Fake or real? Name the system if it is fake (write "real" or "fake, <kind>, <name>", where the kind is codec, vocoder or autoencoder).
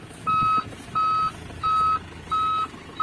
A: real